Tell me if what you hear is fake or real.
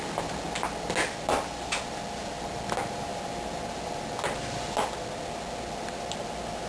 real